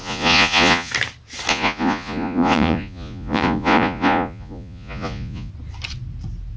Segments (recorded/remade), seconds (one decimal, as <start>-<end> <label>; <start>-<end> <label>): 0.0-0.9 remade; 0.9-1.5 recorded; 1.5-5.5 remade; 5.5-6.6 recorded